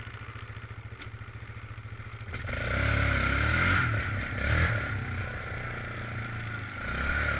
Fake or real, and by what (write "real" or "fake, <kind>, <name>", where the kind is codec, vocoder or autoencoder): real